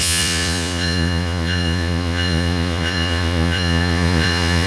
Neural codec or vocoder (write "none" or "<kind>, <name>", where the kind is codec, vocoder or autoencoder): vocoder, Vocos